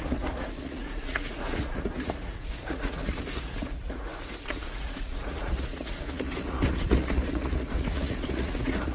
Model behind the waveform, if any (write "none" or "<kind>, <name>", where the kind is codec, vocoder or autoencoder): vocoder, Vocos